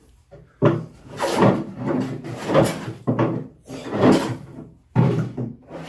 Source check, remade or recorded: remade